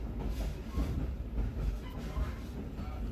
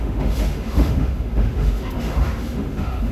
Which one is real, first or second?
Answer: first